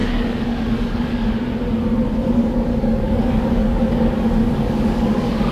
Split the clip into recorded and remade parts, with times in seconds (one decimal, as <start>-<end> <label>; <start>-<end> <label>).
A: 0.0-1.3 remade; 1.3-2.7 recorded; 2.7-5.5 remade